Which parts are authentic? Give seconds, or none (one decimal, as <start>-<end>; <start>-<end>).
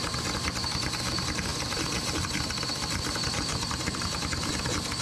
0.0-1.5; 4.5-5.0